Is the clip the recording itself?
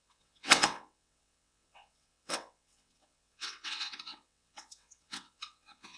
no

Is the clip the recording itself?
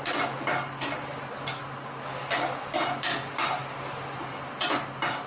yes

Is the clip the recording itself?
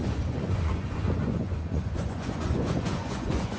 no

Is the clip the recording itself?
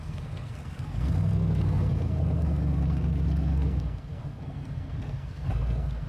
no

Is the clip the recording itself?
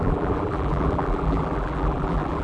no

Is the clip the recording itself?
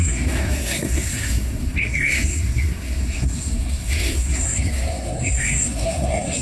no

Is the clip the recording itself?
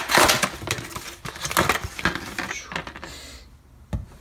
yes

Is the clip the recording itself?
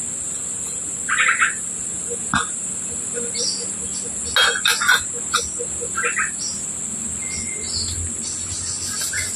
yes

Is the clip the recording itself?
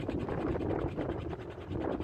yes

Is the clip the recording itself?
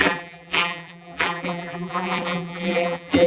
no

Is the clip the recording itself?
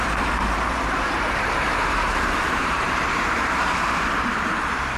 no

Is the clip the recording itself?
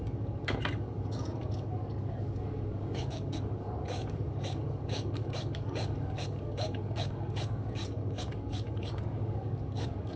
no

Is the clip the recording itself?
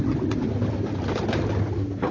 yes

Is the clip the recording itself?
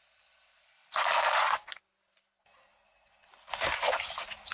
yes